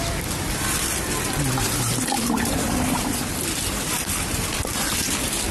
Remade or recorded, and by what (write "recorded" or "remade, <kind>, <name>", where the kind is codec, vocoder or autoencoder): recorded